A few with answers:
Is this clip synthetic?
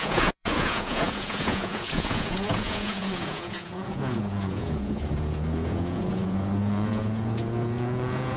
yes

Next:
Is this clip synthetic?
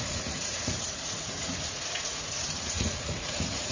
yes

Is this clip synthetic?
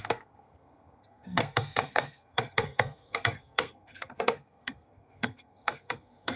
yes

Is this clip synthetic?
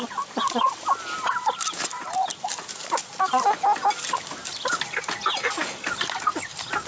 no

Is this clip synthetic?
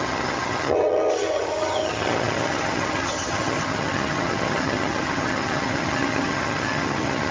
yes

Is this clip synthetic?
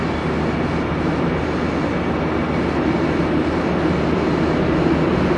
no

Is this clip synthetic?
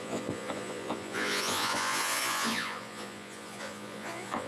yes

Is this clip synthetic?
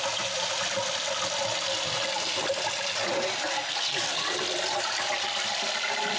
yes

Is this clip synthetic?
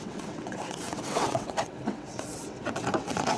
yes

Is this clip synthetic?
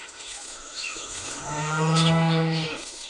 yes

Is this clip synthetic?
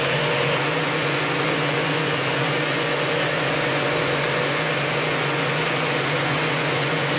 yes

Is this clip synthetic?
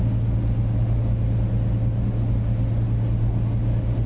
no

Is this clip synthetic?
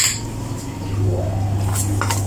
no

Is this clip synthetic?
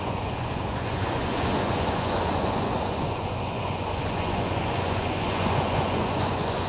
yes